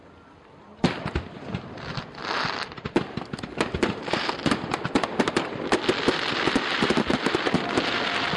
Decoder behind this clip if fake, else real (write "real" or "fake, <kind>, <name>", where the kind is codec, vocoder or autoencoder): real